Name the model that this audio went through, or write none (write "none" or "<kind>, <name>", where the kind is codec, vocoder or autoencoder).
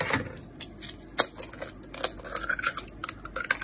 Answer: none